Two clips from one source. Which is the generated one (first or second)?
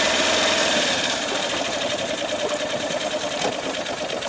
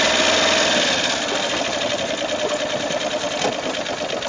first